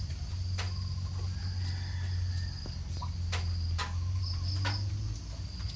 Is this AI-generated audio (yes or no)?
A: no